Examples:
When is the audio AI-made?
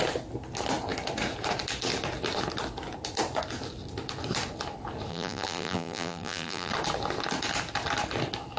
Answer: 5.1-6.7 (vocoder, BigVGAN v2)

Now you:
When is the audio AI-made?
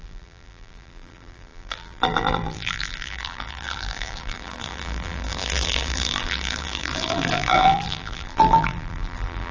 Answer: 0.0-9.5 (vocoder, BigVGAN v2)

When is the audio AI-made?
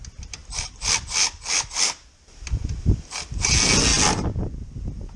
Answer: 0.4-3.5 (vocoder, BigVGAN v2)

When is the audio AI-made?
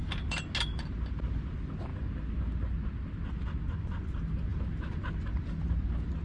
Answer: none